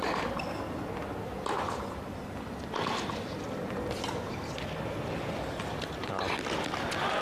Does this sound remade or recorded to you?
recorded